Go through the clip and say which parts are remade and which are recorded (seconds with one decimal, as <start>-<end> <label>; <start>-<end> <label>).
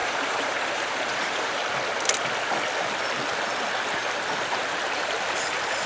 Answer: 0.0-1.6 remade; 1.6-4.5 recorded; 4.5-5.9 remade